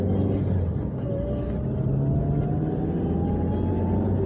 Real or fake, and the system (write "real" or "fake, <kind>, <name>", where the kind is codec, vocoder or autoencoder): real